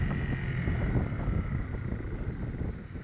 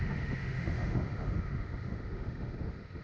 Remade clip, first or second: second